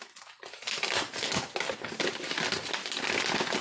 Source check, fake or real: real